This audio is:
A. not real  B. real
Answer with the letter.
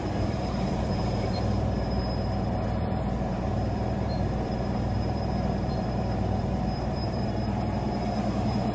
A